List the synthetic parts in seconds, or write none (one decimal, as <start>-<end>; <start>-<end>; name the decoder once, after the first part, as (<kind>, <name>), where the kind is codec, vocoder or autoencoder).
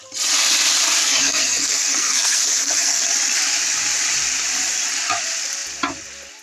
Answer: 1.0-3.0 (codec, SNAC)